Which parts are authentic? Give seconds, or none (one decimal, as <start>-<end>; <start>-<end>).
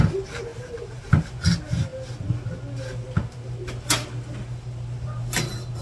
0.0-5.8